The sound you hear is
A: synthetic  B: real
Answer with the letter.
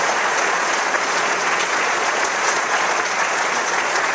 A